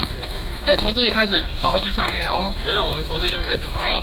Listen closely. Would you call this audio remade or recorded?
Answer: remade